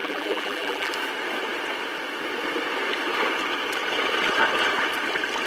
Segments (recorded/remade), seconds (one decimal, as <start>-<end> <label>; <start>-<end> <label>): 0.0-0.9 remade; 0.9-5.5 recorded